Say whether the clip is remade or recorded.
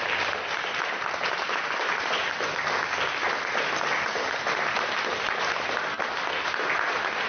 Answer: recorded